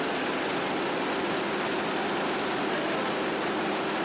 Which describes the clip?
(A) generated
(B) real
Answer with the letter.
B